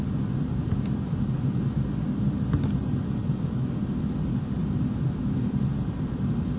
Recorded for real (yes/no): no